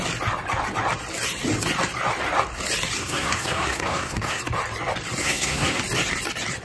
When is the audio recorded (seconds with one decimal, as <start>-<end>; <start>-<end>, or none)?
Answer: 0.0-3.0; 4.4-5.2; 5.8-6.6